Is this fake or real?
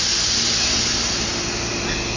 real